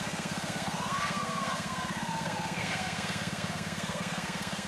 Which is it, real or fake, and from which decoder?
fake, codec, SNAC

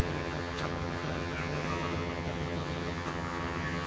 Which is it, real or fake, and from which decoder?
fake, vocoder, HiFi-GAN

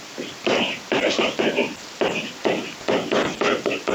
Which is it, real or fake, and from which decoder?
real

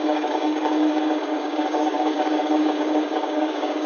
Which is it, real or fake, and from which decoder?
fake, codec, DAC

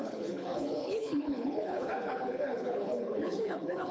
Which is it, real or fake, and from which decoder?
fake, codec, HILCodec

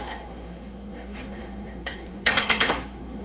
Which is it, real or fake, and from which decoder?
fake, codec, SNAC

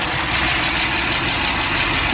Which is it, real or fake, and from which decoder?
real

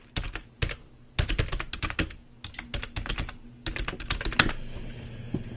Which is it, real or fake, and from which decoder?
real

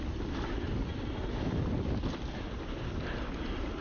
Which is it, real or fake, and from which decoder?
real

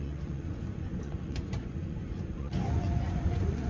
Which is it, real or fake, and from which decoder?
fake, vocoder, Vocos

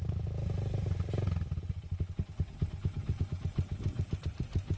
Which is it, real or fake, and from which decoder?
fake, vocoder, BigVGAN v2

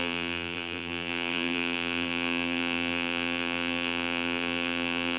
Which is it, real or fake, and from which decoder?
fake, vocoder, BigVGAN v2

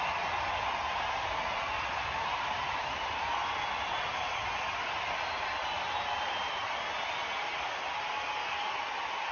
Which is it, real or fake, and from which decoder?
real